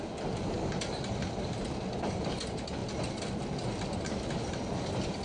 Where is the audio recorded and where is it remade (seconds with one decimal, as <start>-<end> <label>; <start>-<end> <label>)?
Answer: 0.0-5.2 recorded